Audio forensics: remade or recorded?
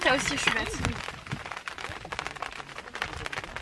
recorded